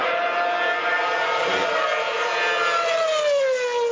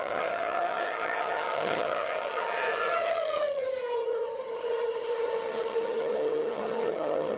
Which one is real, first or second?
first